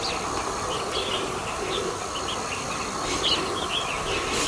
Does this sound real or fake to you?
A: real